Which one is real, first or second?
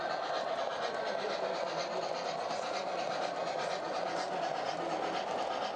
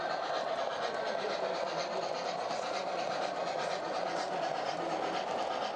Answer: first